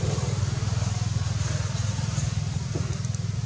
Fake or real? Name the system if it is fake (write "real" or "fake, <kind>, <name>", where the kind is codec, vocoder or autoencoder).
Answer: real